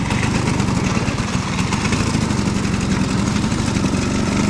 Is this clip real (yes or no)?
yes